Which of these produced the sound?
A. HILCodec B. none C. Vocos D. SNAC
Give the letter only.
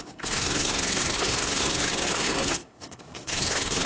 D